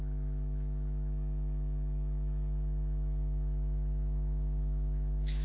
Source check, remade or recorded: remade